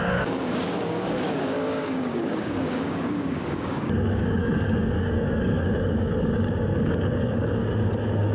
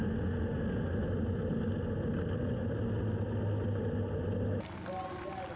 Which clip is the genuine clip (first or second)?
second